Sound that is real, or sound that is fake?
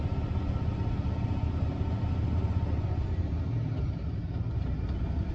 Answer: real